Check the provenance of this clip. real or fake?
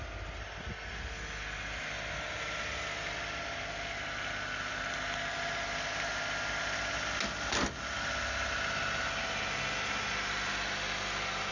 real